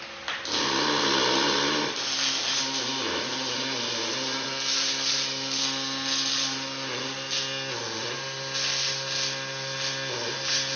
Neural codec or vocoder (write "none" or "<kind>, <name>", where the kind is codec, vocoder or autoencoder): none